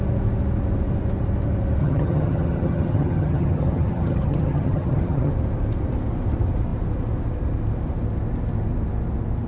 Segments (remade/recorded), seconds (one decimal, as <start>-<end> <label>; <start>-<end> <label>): 0.0-1.8 recorded; 1.8-5.3 remade; 5.3-9.5 recorded